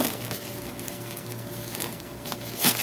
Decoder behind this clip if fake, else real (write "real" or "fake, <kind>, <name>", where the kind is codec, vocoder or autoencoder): fake, codec, SNAC